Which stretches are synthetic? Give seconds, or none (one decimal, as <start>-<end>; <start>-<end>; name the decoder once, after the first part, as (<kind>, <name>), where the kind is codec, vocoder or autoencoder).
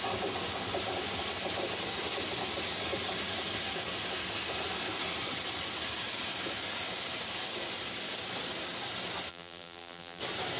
9.3-10.2 (vocoder, BigVGAN v2)